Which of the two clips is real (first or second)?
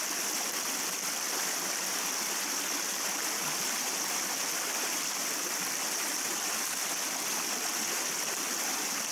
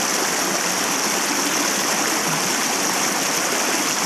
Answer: second